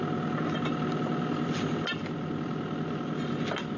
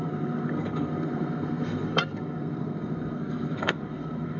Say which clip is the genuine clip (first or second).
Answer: first